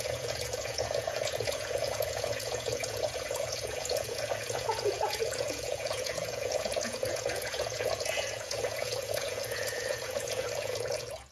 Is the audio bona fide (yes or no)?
no